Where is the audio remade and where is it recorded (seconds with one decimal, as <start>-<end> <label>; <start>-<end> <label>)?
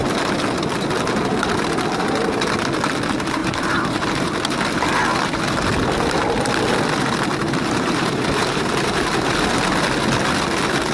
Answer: 0.0-3.4 recorded; 3.4-4.3 remade; 4.3-7.4 recorded; 7.4-9.3 remade; 9.3-10.9 recorded